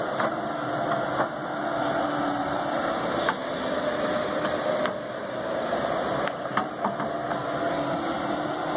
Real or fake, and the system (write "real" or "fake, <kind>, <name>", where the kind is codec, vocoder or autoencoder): real